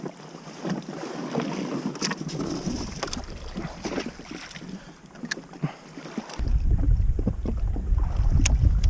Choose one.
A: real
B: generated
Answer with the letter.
A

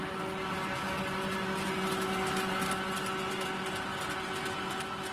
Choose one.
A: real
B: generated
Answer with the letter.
A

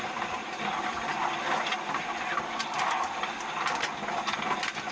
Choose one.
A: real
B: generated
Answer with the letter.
A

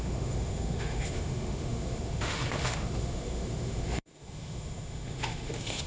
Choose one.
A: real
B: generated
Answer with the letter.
B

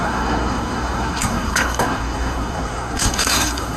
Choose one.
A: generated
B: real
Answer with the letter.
A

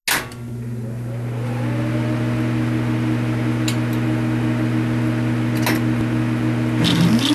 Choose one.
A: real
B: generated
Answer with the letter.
A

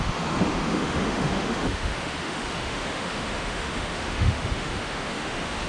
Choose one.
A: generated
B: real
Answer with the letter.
A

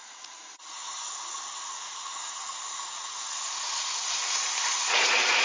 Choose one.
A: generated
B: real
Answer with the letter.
A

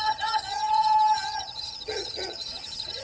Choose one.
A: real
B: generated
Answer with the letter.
B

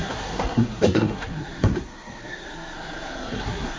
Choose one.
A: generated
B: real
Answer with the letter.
A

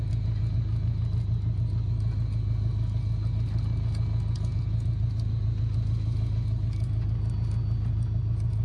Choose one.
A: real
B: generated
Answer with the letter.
A